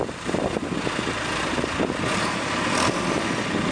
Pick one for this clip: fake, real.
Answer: real